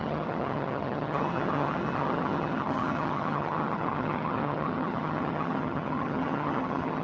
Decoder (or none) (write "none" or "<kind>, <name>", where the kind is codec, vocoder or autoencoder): vocoder, HiFi-GAN